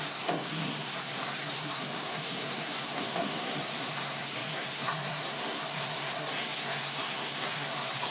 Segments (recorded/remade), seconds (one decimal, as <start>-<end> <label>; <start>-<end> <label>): 0.0-8.1 remade